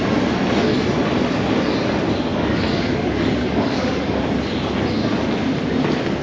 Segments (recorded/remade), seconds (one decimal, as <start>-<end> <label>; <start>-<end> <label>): 0.0-2.3 recorded; 2.3-4.2 remade; 4.2-6.2 recorded